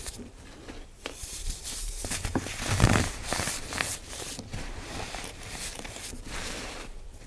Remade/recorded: remade